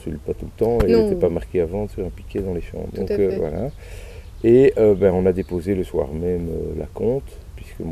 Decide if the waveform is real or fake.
real